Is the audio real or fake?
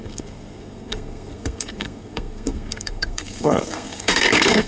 fake